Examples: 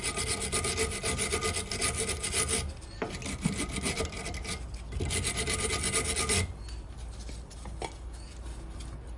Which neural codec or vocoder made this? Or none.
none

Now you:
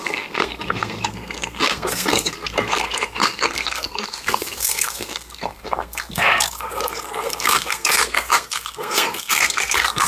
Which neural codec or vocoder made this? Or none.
codec, SNAC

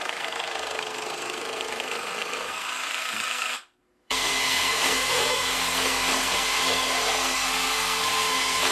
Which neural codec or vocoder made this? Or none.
codec, SNAC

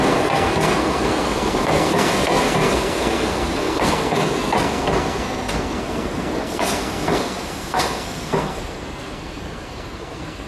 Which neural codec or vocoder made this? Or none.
codec, SNAC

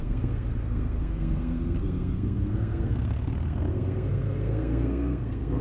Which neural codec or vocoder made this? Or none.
codec, SNAC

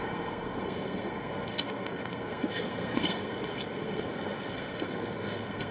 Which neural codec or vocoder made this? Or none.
codec, SNAC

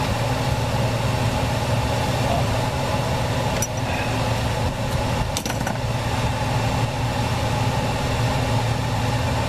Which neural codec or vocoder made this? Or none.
none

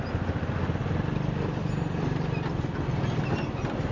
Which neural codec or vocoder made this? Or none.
none